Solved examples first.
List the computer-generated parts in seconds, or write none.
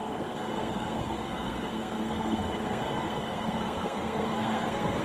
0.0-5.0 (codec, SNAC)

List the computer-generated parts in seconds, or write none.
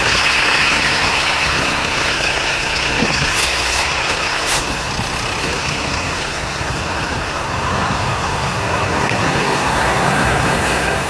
0.0-4.9 (codec, SNAC); 5.4-11.1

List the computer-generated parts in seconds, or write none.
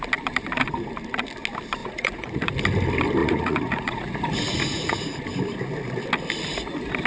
1.8-2.5 (vocoder, Vocos); 3.2-5.2